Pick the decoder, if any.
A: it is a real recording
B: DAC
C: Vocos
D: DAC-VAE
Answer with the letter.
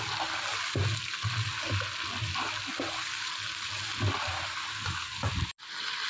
A